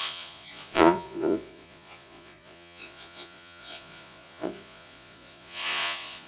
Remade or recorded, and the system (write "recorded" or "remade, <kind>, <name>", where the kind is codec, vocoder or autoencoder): remade, vocoder, Vocos